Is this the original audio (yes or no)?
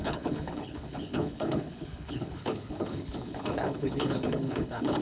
no